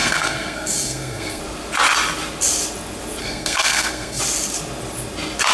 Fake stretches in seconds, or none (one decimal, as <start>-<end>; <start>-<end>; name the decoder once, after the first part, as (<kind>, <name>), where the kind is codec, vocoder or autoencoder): 0.0-1.4 (codec, SNAC); 3.2-4.2